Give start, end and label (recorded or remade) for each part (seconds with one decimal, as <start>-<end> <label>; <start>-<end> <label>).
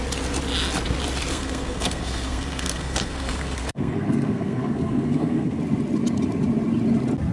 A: 0.0-1.3 recorded; 1.3-5.6 remade; 5.6-7.3 recorded